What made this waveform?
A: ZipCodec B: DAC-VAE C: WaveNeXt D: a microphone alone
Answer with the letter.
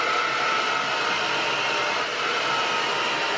D